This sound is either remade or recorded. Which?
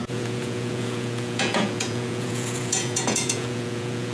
remade